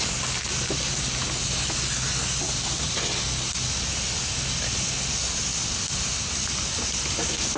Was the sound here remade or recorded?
recorded